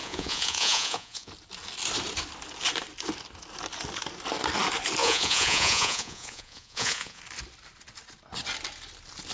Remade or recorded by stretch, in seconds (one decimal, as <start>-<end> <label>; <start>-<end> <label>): 0.0-1.3 remade; 1.3-5.0 recorded; 5.0-7.2 remade; 7.2-9.3 recorded